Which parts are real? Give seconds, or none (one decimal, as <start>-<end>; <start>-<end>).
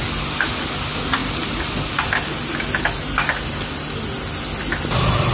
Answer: 0.0-5.3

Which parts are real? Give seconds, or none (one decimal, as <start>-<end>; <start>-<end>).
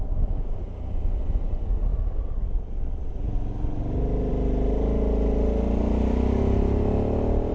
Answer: 0.0-7.5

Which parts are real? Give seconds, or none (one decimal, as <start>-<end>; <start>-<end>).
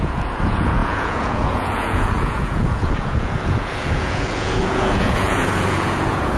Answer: none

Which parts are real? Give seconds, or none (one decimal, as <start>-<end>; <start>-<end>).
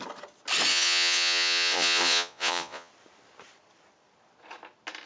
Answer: 0.0-0.7; 2.9-5.1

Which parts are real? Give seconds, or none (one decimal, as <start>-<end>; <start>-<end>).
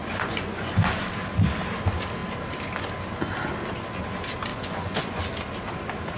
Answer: 1.0-4.5; 5.2-6.2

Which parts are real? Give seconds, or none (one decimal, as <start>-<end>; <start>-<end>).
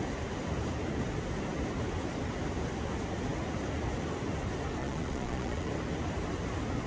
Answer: 0.0-4.8; 5.7-6.9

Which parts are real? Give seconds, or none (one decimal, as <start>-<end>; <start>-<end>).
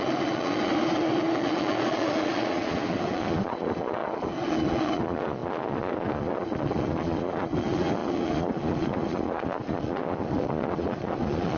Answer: none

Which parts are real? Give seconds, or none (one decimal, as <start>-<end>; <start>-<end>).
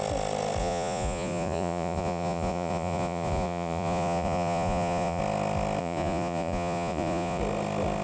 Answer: 0.0-0.6; 5.2-5.8; 7.4-8.0